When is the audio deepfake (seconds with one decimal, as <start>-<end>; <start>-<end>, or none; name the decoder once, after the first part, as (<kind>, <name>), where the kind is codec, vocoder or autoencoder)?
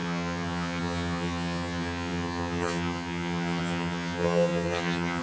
0.0-5.2 (vocoder, HiFi-GAN)